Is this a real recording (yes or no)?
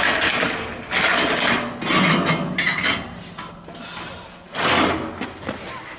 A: yes